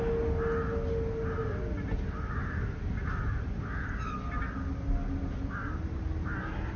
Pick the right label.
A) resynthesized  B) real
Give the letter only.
B